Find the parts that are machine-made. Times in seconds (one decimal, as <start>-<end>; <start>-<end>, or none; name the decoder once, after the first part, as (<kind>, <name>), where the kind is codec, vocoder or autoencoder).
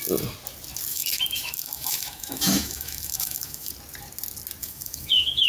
0.9-3.7 (autoencoder, DAC-VAE); 4.6-5.5